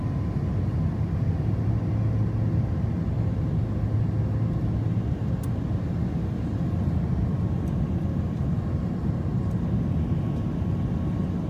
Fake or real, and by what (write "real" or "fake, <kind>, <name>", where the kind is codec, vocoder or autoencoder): real